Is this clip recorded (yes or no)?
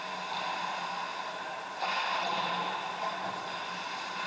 yes